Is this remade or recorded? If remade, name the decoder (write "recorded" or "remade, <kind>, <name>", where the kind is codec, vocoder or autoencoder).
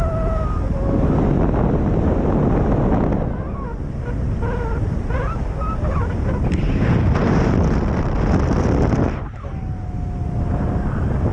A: recorded